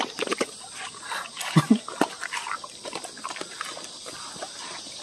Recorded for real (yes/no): yes